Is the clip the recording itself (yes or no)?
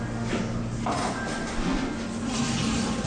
yes